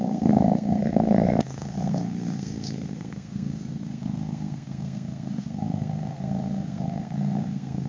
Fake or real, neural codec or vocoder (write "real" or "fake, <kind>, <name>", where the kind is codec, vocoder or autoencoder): fake, codec, SNAC